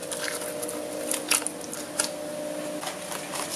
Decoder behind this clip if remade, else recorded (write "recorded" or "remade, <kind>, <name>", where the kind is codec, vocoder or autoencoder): recorded